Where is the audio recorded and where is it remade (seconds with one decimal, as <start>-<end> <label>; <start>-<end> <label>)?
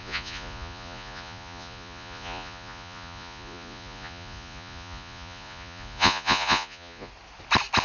0.0-7.1 remade; 7.1-7.8 recorded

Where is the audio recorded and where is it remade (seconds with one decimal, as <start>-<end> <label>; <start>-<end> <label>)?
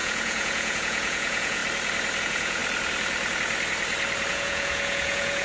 0.0-1.6 remade; 1.6-2.2 recorded; 2.2-2.6 remade; 2.6-4.3 recorded; 4.3-5.4 remade